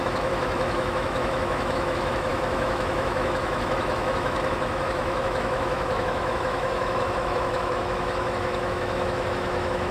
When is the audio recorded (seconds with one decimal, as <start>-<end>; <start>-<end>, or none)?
none